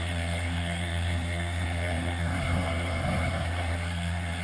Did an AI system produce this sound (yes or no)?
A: yes